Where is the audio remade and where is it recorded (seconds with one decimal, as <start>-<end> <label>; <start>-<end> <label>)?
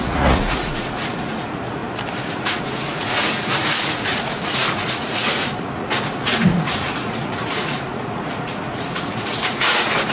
0.0-1.8 remade; 1.8-2.3 recorded; 2.3-10.1 remade